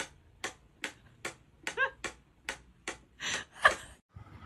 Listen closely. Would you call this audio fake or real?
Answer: real